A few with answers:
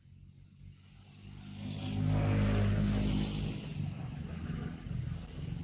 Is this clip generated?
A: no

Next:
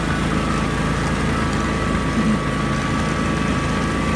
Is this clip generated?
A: no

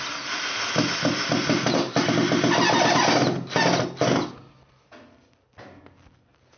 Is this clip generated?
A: no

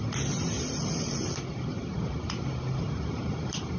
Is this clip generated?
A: no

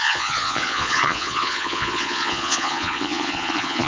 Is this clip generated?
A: yes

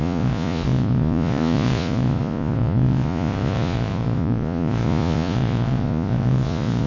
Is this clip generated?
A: yes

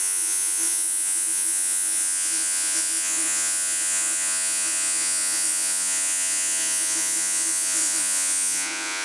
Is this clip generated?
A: yes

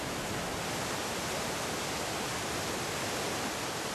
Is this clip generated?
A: no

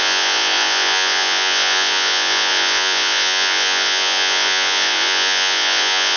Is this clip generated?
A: yes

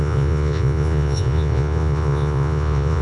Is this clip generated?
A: yes